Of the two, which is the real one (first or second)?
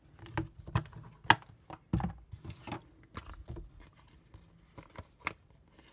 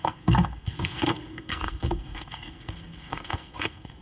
first